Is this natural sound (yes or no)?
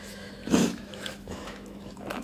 no